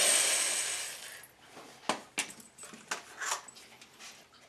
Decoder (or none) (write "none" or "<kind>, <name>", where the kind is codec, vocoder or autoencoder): none